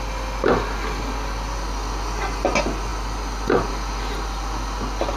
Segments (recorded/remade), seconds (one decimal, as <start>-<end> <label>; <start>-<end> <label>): 0.0-5.2 recorded